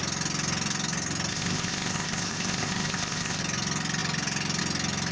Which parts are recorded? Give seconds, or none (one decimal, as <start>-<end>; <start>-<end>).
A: 0.0-1.3; 3.4-5.1